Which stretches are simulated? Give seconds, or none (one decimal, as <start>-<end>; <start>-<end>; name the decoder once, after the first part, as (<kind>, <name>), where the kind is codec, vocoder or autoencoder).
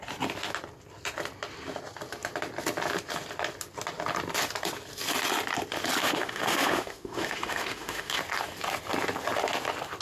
6.0-8.2 (autoencoder, DAC-VAE)